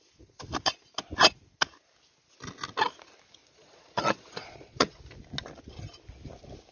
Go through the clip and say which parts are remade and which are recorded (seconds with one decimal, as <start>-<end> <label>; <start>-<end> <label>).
0.0-3.4 recorded; 3.4-5.0 remade; 5.0-6.7 recorded